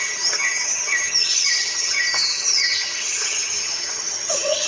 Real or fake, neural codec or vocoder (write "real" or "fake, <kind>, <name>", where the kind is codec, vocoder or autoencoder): fake, vocoder, HiFi-GAN